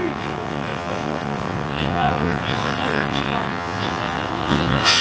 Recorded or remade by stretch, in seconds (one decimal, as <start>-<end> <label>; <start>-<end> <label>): 0.0-5.0 remade